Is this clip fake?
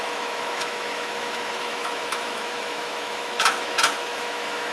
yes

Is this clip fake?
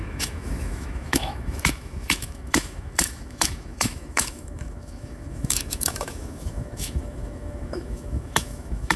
yes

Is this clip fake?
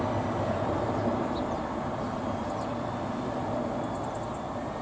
no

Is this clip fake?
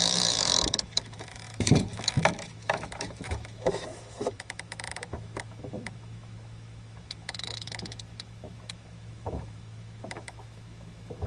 yes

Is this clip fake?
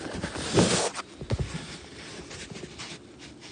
no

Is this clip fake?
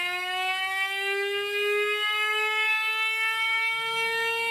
yes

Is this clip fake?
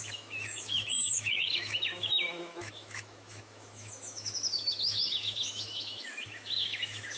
yes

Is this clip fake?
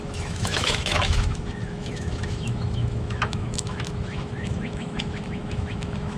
yes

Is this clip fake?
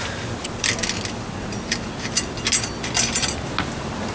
no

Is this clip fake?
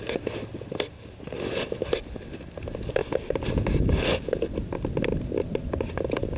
no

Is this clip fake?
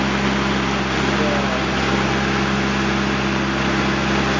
no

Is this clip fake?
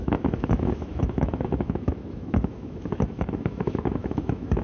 yes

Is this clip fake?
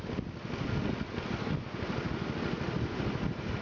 no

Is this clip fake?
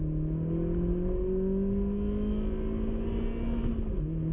no